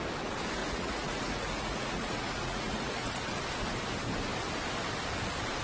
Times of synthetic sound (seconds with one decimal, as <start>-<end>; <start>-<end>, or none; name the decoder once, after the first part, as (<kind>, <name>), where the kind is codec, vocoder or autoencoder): 0.6-3.4 (vocoder, Vocos)